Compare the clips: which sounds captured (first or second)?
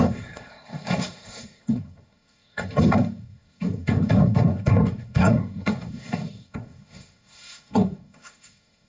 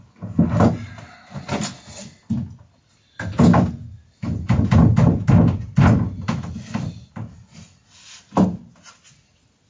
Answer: second